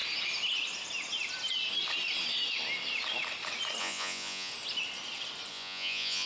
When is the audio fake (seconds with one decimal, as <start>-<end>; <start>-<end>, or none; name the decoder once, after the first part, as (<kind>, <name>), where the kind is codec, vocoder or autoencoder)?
3.8-4.5 (vocoder, Vocos); 5.5-6.3